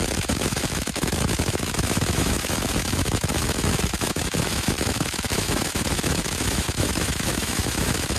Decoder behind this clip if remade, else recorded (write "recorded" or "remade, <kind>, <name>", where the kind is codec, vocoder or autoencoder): remade, autoencoder, DAC-VAE